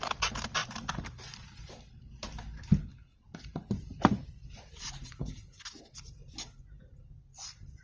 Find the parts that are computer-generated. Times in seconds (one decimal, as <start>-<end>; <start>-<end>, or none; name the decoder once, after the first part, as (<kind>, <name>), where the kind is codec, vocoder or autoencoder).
0.6-2.4 (vocoder, BigVGAN v2); 3.1-6.3